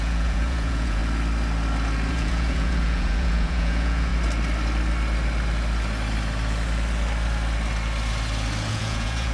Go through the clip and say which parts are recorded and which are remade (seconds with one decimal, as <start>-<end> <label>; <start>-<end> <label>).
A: 0.0-1.0 remade; 1.0-2.1 recorded; 2.1-4.1 remade; 4.1-8.7 recorded; 8.7-9.3 remade